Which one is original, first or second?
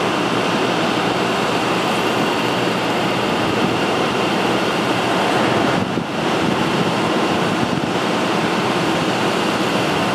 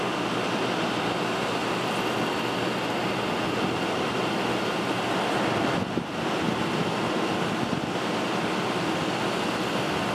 second